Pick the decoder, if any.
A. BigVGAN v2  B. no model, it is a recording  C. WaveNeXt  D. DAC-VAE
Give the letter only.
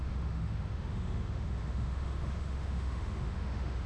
D